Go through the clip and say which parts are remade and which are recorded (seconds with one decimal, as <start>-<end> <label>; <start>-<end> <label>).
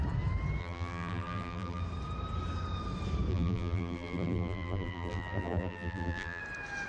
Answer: 0.0-0.6 recorded; 0.6-1.8 remade; 1.8-3.3 recorded; 3.3-6.4 remade; 6.4-6.9 recorded